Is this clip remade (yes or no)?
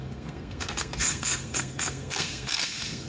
yes